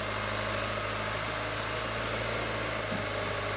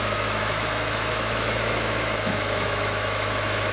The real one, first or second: first